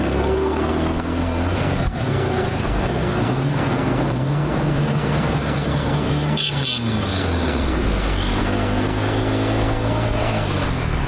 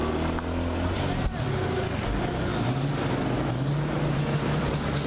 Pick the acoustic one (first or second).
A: second